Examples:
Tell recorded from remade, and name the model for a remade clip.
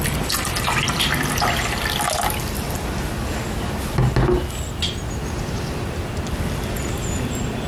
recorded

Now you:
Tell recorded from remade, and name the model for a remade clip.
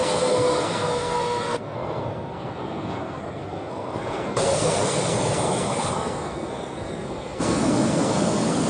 remade, codec, SNAC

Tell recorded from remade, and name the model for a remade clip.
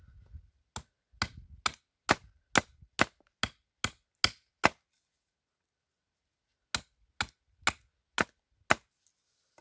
recorded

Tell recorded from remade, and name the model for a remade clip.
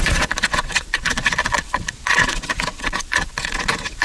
remade, vocoder, Vocos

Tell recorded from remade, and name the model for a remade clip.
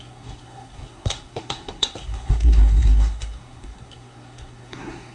remade, codec, SNAC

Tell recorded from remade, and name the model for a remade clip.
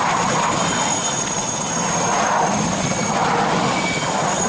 recorded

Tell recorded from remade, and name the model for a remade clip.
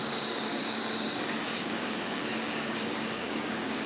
remade, codec, DAC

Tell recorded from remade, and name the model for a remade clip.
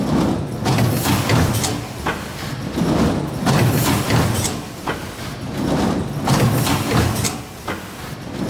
recorded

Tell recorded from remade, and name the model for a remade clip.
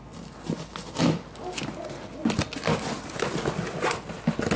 recorded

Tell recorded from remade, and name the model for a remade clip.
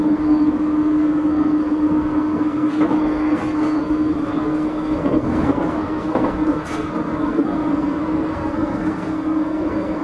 remade, codec, SNAC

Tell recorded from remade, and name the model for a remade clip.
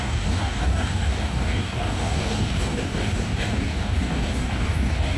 remade, codec, DAC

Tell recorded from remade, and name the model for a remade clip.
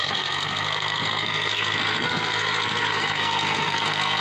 remade, codec, SNAC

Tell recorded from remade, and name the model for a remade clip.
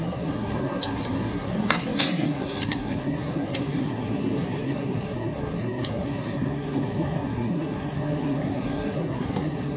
remade, codec, SNAC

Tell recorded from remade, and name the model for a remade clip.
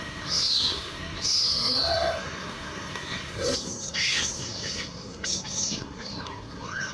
remade, codec, SNAC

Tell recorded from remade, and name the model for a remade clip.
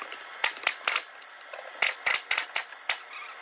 recorded